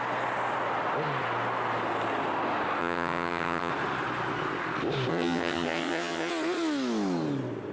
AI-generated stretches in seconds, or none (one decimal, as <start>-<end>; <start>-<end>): 2.8-3.7; 5.1-6.3